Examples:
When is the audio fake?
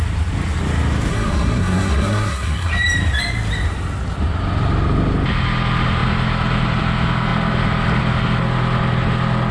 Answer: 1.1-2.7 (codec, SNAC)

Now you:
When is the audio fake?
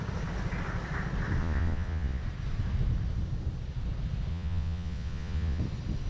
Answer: 1.4-2.2 (vocoder, Vocos); 4.3-5.6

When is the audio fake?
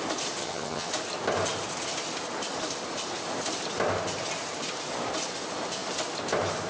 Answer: 0.4-0.9 (vocoder, HiFi-GAN)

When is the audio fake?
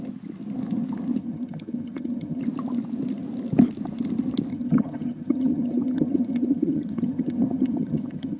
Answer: 1.2-2.4 (vocoder, HiFi-GAN); 4.5-8.4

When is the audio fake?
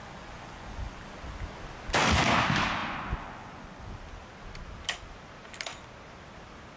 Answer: 0.0-1.0 (vocoder, Vocos); 2.8-3.9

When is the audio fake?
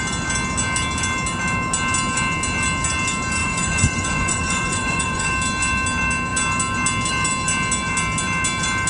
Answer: 3.4-5.3 (vocoder, Vocos)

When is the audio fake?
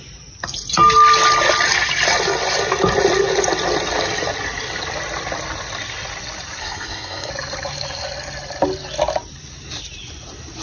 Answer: 6.6-7.3 (codec, SNAC)